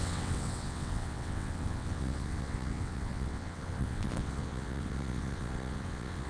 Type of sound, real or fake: fake